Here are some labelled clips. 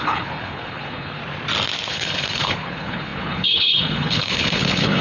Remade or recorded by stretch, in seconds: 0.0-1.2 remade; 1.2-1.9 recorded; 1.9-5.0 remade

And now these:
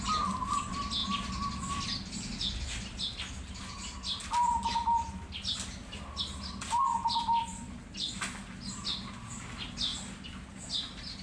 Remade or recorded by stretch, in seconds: 0.0-11.2 recorded

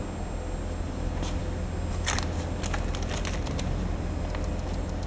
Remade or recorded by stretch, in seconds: 0.0-5.1 recorded

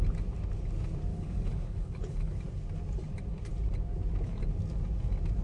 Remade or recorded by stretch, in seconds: 0.0-1.1 recorded; 1.1-2.4 remade; 2.4-5.4 recorded